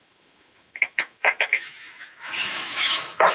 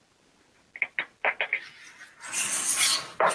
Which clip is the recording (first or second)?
second